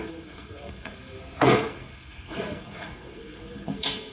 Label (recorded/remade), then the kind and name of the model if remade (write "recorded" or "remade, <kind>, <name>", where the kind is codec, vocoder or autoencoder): remade, codec, SNAC